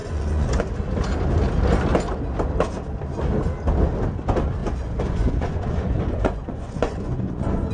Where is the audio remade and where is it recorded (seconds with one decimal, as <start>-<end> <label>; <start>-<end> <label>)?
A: 0.0-0.6 remade; 0.6-4.6 recorded; 4.6-7.7 remade